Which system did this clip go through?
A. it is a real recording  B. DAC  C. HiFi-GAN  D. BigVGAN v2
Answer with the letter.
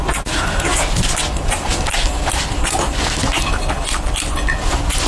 A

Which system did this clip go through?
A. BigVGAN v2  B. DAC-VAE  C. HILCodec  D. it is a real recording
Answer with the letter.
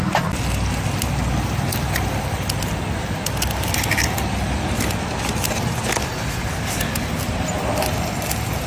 D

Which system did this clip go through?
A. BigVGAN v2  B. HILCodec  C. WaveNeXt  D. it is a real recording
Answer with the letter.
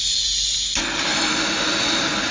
D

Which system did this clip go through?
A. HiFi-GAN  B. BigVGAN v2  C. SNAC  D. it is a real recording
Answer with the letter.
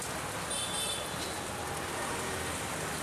D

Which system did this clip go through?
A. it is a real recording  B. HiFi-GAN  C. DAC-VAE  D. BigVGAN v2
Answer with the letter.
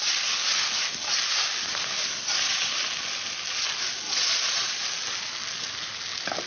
A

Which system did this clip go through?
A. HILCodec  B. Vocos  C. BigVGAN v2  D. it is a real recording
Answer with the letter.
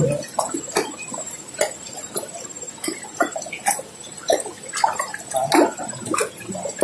D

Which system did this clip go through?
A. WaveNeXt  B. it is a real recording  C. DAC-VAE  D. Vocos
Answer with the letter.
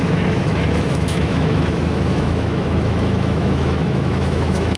C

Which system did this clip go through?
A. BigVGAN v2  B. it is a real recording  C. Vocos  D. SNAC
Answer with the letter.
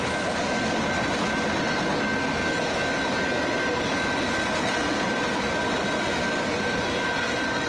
B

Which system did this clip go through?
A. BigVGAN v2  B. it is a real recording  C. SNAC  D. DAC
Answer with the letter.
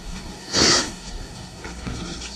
C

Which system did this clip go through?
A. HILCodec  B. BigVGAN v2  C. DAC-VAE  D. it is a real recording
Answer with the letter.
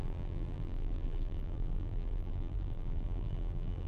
B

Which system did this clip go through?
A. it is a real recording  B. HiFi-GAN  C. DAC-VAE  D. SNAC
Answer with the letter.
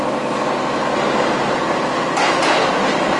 A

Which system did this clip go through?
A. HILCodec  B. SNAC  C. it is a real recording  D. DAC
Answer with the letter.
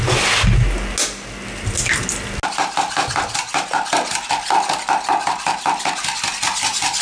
C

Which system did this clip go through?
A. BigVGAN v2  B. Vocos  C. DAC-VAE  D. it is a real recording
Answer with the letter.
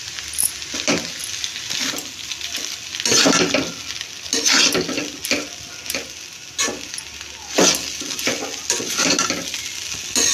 D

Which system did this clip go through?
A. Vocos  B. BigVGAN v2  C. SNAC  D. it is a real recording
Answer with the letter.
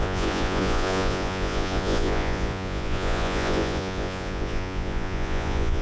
A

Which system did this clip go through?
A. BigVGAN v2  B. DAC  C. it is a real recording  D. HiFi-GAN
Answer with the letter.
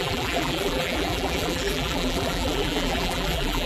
A